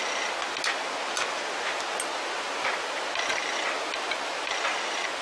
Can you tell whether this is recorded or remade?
recorded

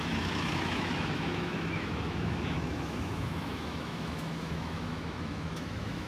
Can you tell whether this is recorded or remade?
remade